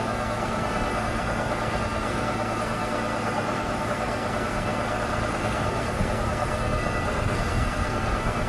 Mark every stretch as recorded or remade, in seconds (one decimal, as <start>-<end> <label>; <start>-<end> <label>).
0.0-8.5 remade

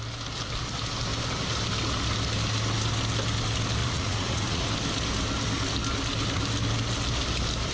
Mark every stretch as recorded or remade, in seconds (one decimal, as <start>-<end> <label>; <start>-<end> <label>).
0.0-3.8 recorded; 3.8-4.7 remade; 4.7-7.7 recorded

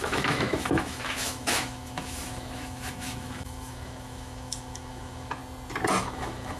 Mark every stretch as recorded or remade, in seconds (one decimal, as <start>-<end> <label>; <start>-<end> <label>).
0.0-5.4 remade; 5.4-6.0 recorded; 6.0-6.6 remade

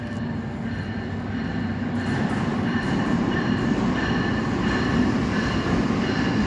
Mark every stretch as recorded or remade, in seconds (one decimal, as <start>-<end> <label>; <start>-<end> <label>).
0.0-2.5 recorded; 2.5-3.8 remade; 3.8-6.5 recorded